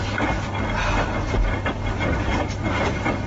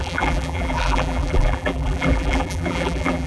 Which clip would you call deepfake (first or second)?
second